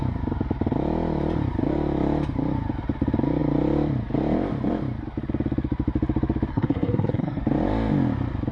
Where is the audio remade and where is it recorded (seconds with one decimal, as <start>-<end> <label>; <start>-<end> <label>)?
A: 0.0-6.5 recorded; 6.5-7.4 remade; 7.4-8.5 recorded